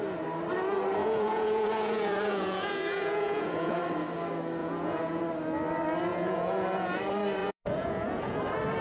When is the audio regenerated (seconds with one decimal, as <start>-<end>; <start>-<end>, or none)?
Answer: 1.0-3.8; 4.6-5.2; 6.1-7.0; 7.4-8.4